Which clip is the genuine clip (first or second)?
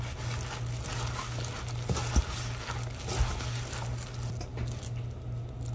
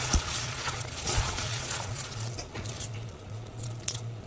first